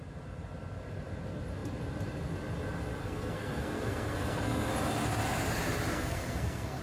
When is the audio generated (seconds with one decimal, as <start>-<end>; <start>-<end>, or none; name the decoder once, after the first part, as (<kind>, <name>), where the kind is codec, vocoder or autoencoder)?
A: 3.0-4.7 (codec, SNAC); 5.9-6.8